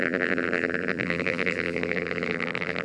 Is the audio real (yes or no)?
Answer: no